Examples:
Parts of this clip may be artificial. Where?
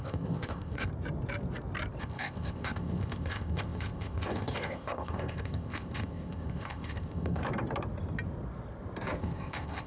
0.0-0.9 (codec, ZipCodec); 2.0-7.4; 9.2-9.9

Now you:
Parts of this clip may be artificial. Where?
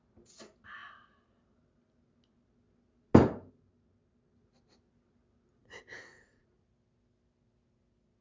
5.6-6.6 (vocoder, Vocos)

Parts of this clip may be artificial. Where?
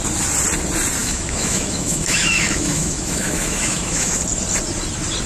1.0-4.2 (autoencoder, DAC-VAE)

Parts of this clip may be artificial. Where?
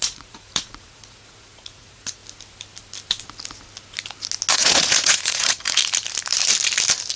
0.0-2.2 (vocoder, Vocos); 4.5-5.8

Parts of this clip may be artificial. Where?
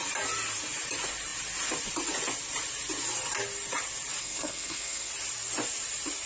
4.2-5.1 (codec, SNAC)